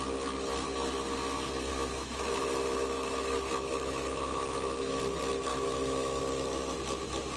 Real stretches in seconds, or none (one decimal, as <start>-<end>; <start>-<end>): 0.0-1.7; 5.0-5.5; 6.2-7.4